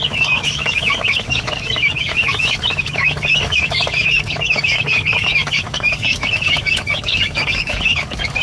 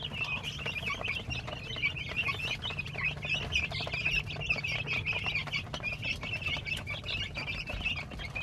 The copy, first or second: first